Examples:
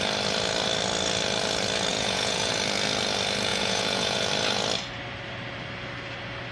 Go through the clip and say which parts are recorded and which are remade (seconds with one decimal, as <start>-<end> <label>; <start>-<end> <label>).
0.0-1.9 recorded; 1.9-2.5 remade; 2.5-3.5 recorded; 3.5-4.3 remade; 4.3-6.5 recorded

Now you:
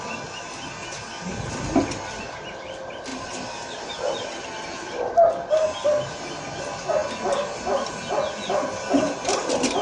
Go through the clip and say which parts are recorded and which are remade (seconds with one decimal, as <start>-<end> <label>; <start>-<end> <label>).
0.0-9.8 recorded

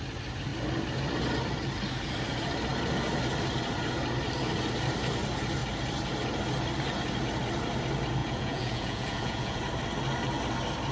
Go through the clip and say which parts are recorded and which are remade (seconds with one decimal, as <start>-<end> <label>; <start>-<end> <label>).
0.0-8.2 recorded; 8.2-9.6 remade; 9.6-10.9 recorded